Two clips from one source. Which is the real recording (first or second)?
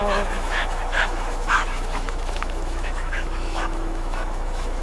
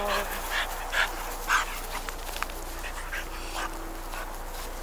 second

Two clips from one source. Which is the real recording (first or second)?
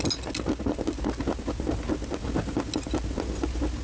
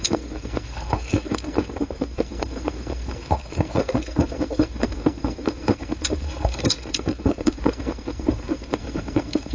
first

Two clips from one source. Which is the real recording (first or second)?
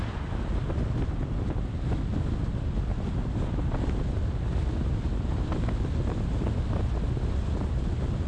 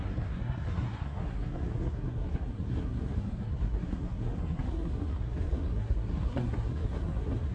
first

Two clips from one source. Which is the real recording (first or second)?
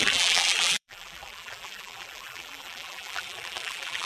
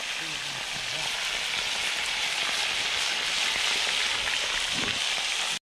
second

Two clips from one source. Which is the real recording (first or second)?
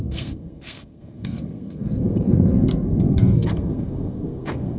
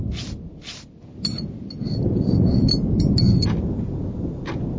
second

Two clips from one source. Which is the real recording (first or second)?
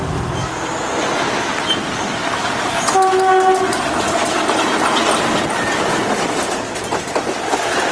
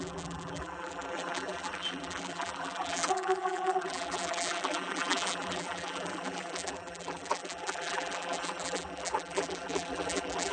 first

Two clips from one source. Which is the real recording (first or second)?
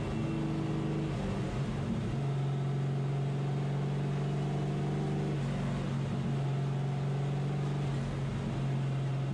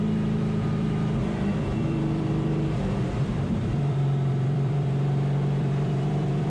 first